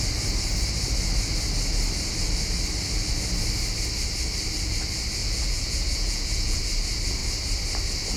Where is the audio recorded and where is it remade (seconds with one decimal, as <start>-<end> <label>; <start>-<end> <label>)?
0.0-5.2 recorded; 5.2-6.6 remade; 6.6-8.2 recorded